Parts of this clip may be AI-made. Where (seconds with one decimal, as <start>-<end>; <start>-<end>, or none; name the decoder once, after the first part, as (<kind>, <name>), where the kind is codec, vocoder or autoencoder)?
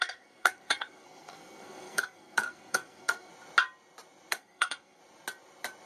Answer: 0.0-3.3 (codec, SNAC); 4.3-5.0